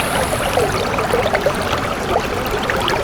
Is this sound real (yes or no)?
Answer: yes